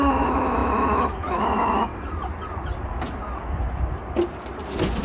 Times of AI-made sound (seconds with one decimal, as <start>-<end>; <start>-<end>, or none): 0.0-1.9